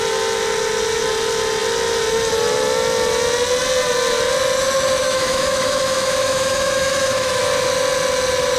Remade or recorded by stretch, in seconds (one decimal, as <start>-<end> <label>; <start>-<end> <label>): 0.0-5.0 recorded; 5.0-7.4 remade; 7.4-8.6 recorded